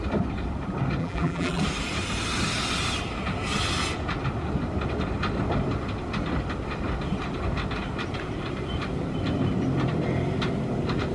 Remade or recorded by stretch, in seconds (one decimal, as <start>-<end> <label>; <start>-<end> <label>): 0.0-1.0 recorded; 1.0-1.6 remade; 1.6-11.1 recorded